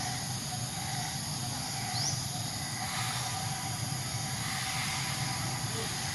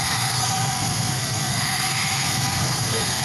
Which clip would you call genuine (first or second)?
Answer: first